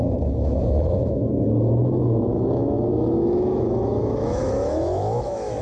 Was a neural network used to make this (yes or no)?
yes